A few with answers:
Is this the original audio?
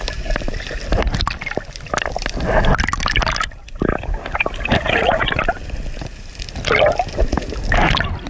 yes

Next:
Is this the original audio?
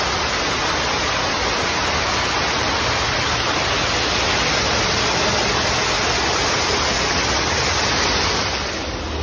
yes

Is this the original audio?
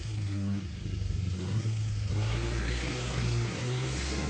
no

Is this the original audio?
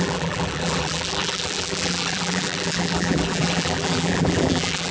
no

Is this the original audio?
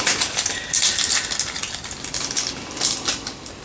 yes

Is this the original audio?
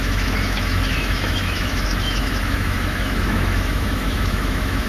no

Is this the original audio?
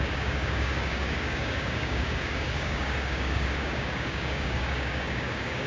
no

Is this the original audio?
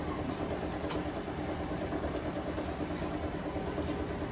yes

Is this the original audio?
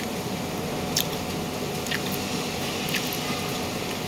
yes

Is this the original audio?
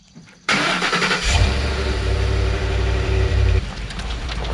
no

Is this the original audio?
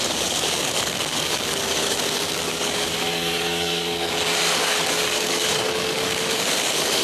no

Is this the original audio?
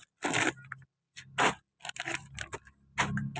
yes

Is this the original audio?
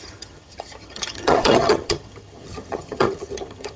no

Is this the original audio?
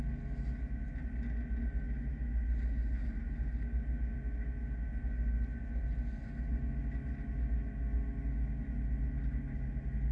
yes